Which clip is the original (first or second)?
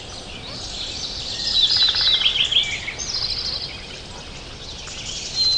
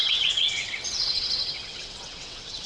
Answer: first